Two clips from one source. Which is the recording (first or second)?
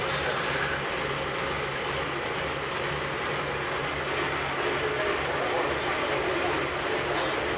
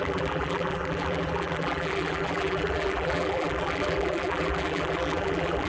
first